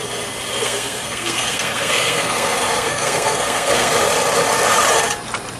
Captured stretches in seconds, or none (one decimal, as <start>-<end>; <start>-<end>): 0.0-0.5; 3.9-5.6